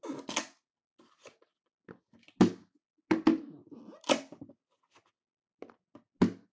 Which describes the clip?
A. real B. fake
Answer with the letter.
A